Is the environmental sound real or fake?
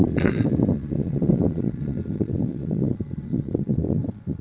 fake